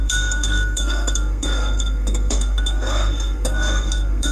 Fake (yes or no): yes